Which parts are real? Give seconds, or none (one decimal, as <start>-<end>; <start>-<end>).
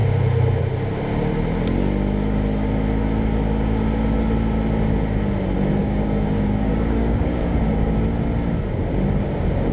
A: 0.0-5.8; 7.6-9.7